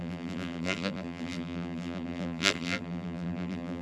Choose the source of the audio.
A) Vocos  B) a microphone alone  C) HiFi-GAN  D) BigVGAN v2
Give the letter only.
D